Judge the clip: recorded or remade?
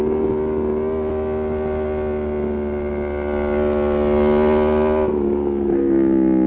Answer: recorded